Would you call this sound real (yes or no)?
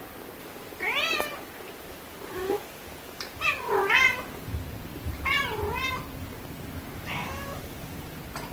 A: yes